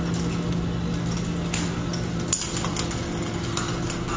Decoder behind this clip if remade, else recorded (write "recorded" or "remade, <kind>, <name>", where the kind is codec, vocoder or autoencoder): recorded